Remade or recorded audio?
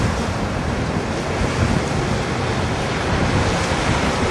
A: recorded